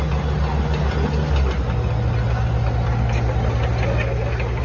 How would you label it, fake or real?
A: real